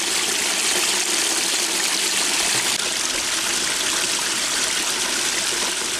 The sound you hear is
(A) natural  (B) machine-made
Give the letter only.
A